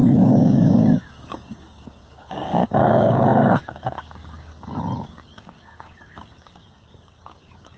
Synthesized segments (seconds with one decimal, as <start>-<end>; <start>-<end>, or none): 0.0-4.5; 5.1-7.8